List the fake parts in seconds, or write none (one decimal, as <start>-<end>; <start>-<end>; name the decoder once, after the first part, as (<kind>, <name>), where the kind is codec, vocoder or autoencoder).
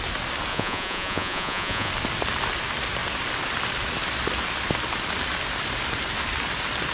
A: 0.5-1.9 (vocoder, Vocos)